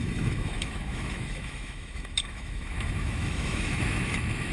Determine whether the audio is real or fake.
fake